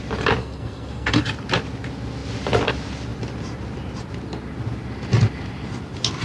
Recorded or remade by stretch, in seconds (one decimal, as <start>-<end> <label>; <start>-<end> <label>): 0.0-0.4 recorded; 0.4-1.2 remade; 1.2-6.2 recorded